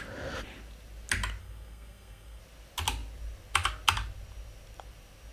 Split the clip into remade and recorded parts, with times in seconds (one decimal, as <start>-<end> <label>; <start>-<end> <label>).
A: 0.0-1.4 recorded; 1.4-2.4 remade; 2.4-5.3 recorded